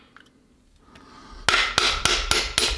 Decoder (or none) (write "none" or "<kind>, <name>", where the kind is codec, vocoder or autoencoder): none